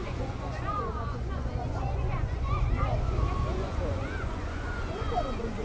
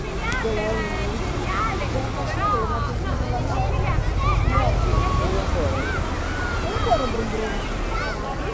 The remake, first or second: first